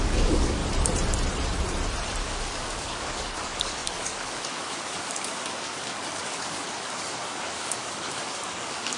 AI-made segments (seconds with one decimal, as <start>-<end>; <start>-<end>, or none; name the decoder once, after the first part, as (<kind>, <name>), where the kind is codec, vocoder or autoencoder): 0.0-0.6 (codec, DAC); 2.2-9.0